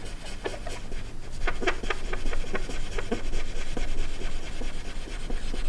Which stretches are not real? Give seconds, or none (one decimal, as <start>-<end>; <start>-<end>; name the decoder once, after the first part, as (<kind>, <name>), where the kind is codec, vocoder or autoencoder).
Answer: none